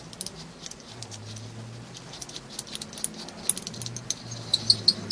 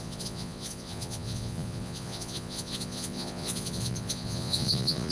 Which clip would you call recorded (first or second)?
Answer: first